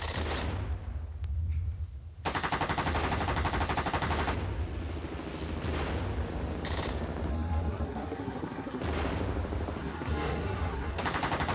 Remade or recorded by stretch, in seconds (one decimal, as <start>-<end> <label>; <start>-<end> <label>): 0.0-7.3 recorded; 7.3-8.8 remade; 8.8-9.8 recorded; 9.8-11.0 remade; 11.0-11.5 recorded